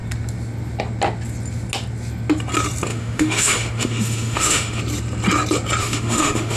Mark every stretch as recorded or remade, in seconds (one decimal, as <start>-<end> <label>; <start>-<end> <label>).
0.0-2.9 recorded; 2.9-4.8 remade; 4.8-5.8 recorded; 5.8-6.6 remade